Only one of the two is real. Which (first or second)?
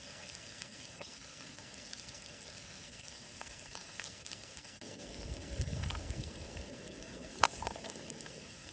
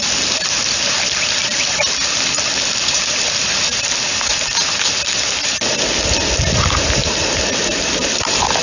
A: second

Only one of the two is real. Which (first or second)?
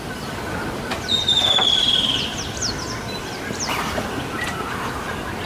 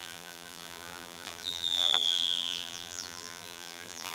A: first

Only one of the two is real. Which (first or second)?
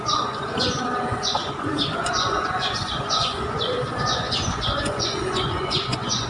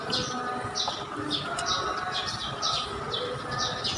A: second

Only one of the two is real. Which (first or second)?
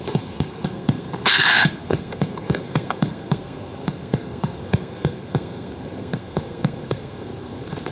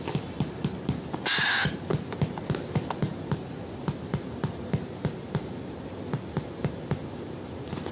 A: second